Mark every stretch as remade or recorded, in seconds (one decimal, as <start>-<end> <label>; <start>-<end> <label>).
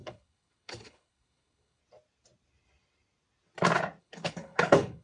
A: 0.0-1.8 remade; 1.8-4.0 recorded; 4.0-5.0 remade